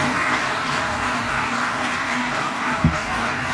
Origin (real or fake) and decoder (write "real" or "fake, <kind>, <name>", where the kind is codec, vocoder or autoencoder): fake, codec, DAC